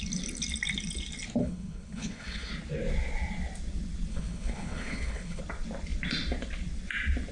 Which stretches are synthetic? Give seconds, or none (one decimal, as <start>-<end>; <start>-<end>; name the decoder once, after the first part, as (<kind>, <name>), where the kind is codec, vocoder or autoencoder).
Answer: 1.4-2.5 (codec, HILCodec); 4.1-5.4